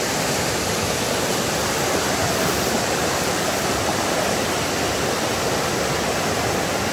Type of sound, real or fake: real